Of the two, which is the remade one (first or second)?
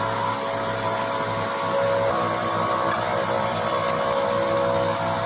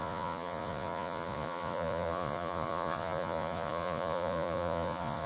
second